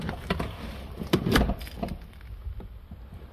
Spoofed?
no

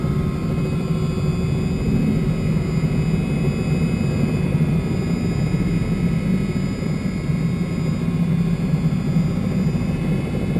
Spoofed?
no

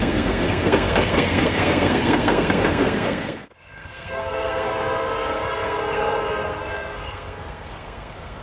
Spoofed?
yes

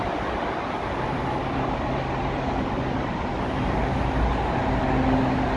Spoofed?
no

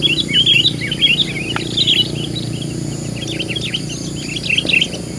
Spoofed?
no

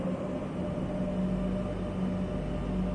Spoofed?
no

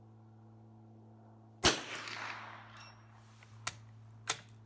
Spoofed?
no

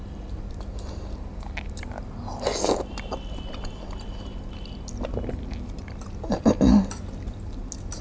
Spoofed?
no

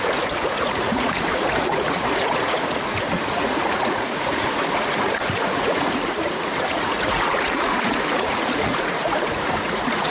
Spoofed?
yes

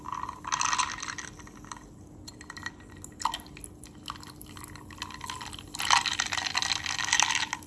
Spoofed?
no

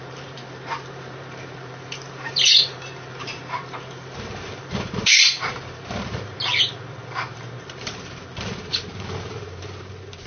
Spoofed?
yes